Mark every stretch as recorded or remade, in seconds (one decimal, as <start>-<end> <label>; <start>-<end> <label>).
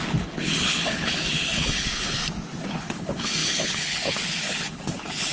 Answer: 0.0-2.2 remade; 2.2-2.7 recorded; 2.7-5.3 remade